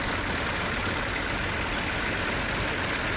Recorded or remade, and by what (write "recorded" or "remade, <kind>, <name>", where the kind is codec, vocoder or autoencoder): recorded